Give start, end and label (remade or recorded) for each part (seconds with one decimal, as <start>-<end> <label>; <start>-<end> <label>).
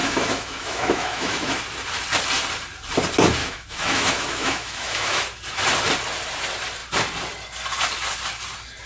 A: 0.0-1.6 remade; 1.6-3.4 recorded; 3.4-5.2 remade; 5.2-8.9 recorded